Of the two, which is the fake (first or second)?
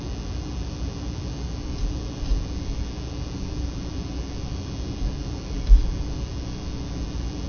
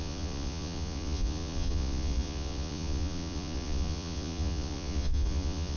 second